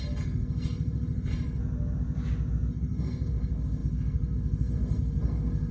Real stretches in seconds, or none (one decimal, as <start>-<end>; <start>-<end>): 1.6-2.7